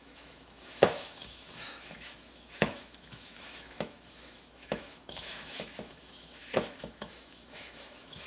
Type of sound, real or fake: fake